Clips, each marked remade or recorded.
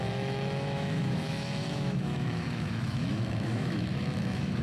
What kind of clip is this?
remade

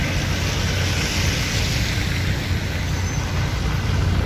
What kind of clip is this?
recorded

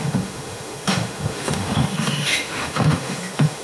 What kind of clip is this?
remade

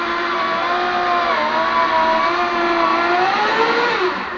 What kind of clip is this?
recorded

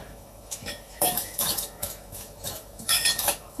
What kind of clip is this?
remade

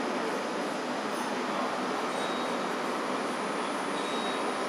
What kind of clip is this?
recorded